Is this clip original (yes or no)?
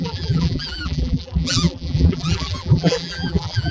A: no